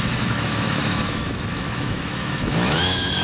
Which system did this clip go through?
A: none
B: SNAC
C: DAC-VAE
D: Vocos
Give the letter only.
C